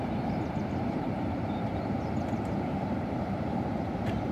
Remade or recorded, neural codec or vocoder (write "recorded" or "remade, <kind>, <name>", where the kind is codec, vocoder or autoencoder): remade, vocoder, BigVGAN v2